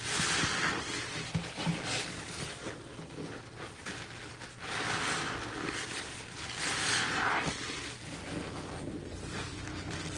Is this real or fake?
real